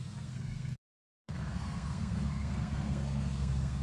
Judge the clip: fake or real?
fake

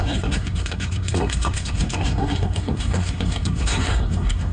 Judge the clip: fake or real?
fake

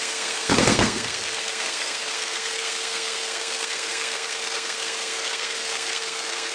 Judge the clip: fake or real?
fake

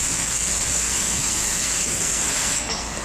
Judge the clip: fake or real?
fake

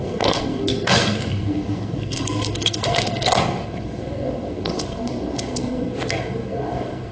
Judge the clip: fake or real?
fake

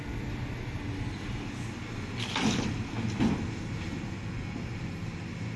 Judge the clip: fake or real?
real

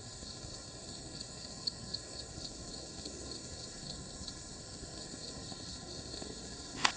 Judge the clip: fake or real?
fake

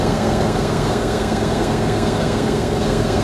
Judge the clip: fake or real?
fake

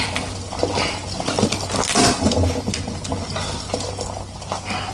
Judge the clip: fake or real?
real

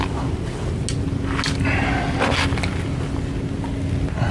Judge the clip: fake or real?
real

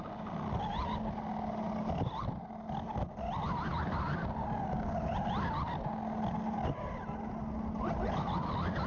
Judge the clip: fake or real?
real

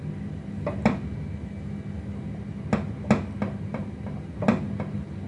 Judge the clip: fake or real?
real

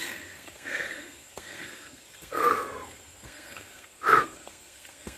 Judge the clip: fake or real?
fake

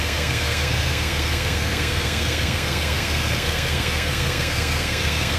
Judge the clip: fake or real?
fake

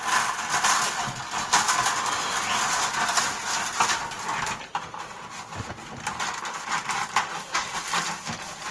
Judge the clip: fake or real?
real